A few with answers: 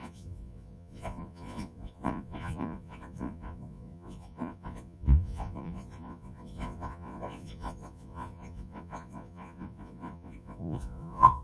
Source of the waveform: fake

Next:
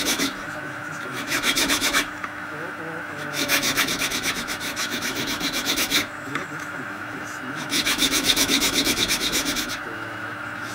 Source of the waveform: fake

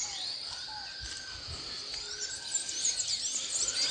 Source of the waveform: real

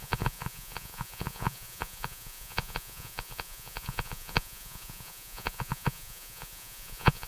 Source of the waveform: fake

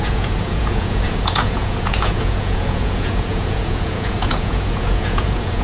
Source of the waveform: fake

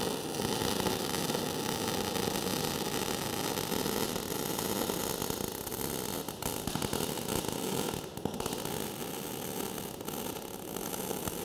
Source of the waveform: real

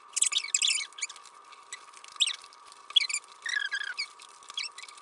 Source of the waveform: real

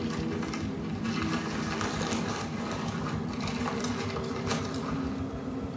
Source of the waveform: real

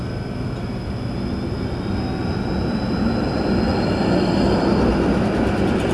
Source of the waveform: real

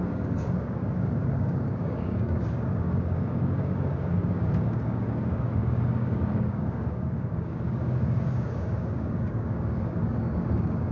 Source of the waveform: fake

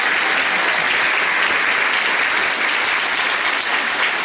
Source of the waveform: real